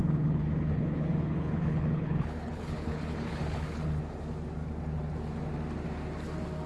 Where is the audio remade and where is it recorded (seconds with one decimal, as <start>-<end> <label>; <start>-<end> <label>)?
0.0-4.0 remade; 4.0-6.7 recorded